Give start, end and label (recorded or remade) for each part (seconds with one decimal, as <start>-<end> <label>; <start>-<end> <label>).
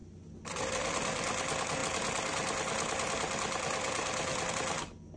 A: 0.0-5.2 recorded